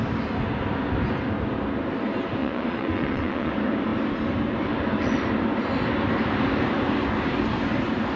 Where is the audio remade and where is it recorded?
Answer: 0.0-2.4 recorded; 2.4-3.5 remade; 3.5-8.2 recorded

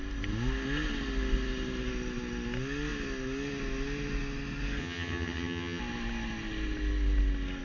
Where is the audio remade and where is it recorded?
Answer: 0.0-4.8 recorded; 4.8-5.8 remade; 5.8-7.6 recorded

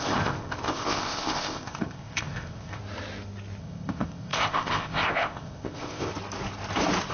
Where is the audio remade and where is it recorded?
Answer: 0.0-2.8 remade; 2.8-3.6 recorded; 3.6-6.1 remade; 6.1-7.1 recorded

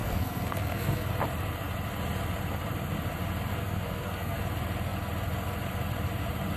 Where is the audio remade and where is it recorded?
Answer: 0.0-1.1 remade; 1.1-3.5 recorded; 3.5-4.4 remade; 4.4-6.6 recorded

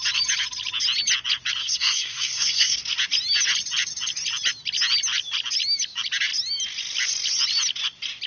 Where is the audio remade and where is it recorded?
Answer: 0.0-1.6 recorded; 1.6-2.8 remade; 2.8-8.3 recorded